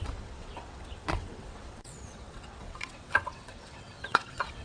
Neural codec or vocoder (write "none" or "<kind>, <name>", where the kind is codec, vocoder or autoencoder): vocoder, WaveNeXt